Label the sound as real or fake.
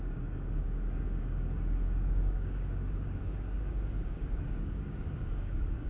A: fake